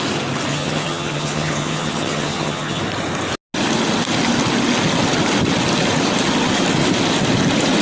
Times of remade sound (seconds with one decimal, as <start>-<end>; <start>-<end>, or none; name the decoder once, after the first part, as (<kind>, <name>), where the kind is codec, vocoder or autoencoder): 0.5-2.8 (vocoder, HiFi-GAN)